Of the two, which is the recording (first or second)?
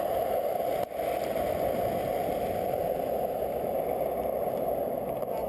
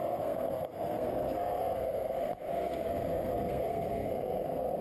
first